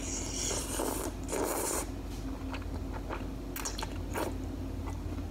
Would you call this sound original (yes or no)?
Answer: yes